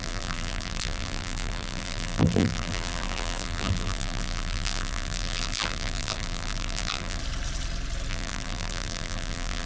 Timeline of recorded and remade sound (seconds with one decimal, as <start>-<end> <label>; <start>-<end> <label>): 0.0-7.2 remade; 7.2-8.1 recorded; 8.1-9.7 remade